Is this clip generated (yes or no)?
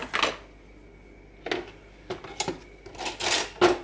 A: no